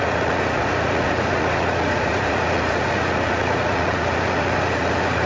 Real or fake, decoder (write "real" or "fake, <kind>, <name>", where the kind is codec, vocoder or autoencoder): fake, vocoder, Vocos